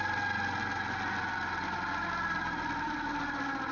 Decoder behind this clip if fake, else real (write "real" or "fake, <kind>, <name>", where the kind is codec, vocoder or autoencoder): real